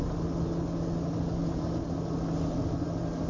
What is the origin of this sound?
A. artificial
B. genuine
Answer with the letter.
B